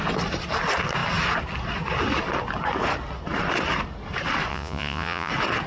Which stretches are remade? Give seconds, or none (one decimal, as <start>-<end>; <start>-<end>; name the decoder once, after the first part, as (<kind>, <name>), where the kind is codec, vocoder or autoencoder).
4.5-5.3 (vocoder, Vocos)